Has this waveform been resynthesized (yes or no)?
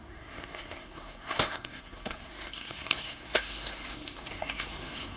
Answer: yes